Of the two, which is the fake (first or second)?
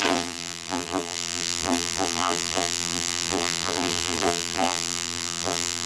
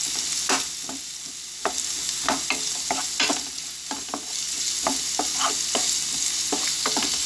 first